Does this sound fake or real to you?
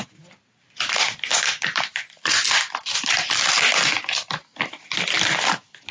fake